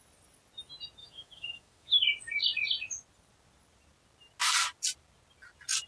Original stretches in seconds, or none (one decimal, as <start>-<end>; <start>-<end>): 0.0-1.0; 2.0-5.9